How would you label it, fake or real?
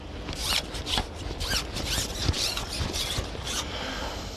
real